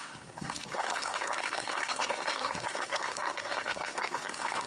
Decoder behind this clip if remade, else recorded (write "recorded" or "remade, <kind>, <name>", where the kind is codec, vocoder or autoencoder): remade, codec, SNAC